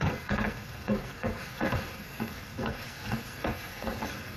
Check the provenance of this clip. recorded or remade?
remade